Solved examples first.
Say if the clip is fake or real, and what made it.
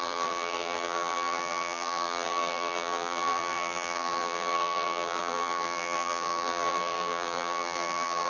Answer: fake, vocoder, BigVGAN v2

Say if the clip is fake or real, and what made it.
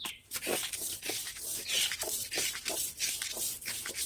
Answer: fake, vocoder, BigVGAN v2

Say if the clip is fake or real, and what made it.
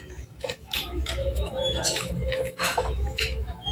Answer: fake, autoencoder, DAC-VAE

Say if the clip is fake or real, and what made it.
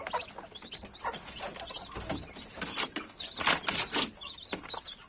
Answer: real